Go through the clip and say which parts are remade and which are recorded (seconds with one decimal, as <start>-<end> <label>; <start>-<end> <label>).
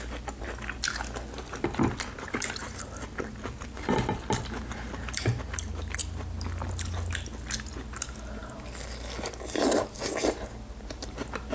0.0-11.5 recorded